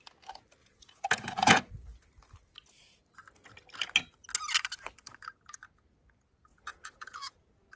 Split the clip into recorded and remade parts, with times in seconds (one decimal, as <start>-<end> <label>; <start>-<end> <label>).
0.0-0.6 recorded; 0.6-1.7 remade; 1.7-6.5 recorded; 6.5-7.8 remade

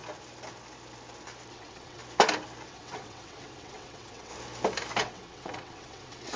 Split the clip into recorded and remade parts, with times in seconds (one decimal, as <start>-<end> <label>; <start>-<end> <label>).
0.0-1.5 recorded; 1.5-2.0 remade; 2.0-2.7 recorded; 2.7-4.3 remade; 4.3-5.0 recorded; 5.0-6.4 remade

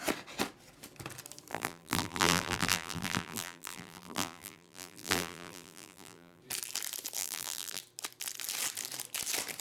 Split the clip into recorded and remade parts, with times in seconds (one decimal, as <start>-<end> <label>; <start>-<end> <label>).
0.0-1.5 recorded; 1.5-6.4 remade; 6.4-7.2 recorded; 7.2-7.8 remade; 7.8-9.6 recorded

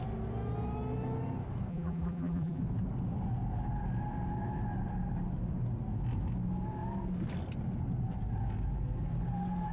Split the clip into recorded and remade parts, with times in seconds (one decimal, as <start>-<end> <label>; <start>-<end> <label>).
0.0-1.7 recorded; 1.7-2.6 remade; 2.6-9.7 recorded

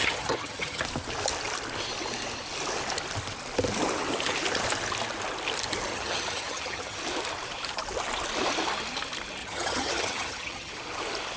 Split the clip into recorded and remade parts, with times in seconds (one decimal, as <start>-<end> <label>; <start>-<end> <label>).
0.0-0.8 remade; 0.8-5.9 recorded; 5.9-7.0 remade; 7.0-9.4 recorded; 9.4-10.7 remade; 10.7-11.4 recorded